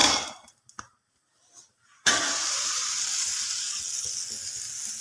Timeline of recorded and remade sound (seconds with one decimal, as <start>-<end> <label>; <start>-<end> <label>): 0.0-3.0 remade; 3.0-5.0 recorded